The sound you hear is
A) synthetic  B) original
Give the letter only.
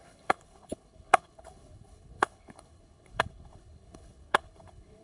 A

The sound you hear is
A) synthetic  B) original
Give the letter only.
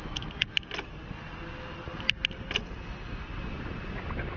B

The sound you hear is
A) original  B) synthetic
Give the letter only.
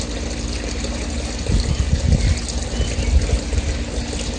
A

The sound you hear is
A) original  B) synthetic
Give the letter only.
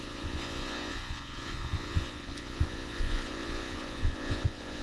B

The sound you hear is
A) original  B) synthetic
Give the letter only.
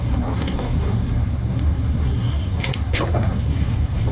B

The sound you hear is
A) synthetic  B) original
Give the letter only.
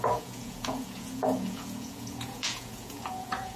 A